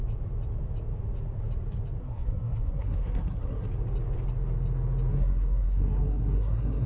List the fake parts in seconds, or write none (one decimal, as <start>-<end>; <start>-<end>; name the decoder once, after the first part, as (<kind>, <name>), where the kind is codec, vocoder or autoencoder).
2.0-3.7 (codec, SNAC); 5.1-6.9